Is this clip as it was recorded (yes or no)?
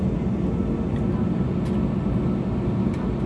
yes